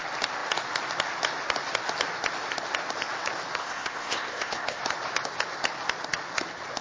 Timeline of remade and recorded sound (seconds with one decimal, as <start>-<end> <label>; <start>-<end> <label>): 0.0-3.6 recorded; 3.6-4.8 remade; 4.8-6.8 recorded